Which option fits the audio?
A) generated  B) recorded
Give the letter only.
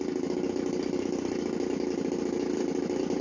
B